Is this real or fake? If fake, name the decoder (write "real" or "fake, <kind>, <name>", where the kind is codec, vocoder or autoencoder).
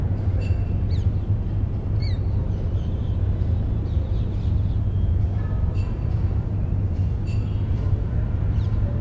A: fake, vocoder, BigVGAN v2